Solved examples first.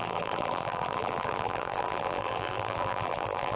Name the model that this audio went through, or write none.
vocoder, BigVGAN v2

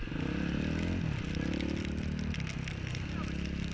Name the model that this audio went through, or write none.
none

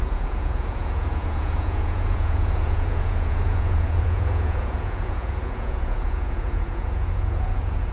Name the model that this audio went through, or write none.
vocoder, Vocos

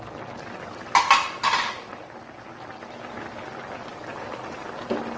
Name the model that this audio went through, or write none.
none